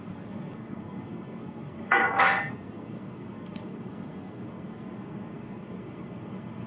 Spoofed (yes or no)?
yes